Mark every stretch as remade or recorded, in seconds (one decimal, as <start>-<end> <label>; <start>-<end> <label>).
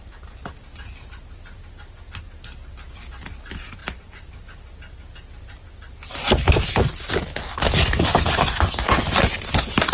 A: 0.0-9.9 recorded